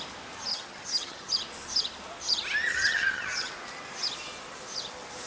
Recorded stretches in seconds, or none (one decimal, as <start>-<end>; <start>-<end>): 0.0-0.5; 1.3-2.7; 3.5-5.3